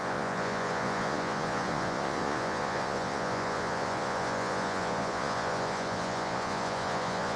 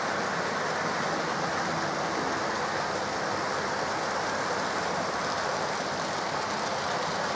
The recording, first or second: second